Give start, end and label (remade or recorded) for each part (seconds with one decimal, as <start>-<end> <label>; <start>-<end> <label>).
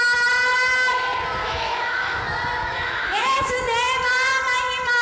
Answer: 0.0-1.4 recorded; 1.4-2.2 remade; 2.2-2.6 recorded; 2.6-3.5 remade; 3.5-5.0 recorded